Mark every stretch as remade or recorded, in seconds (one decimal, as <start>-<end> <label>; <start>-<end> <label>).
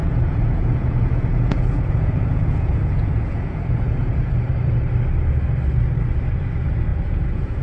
0.0-4.4 remade; 4.4-6.9 recorded; 6.9-7.6 remade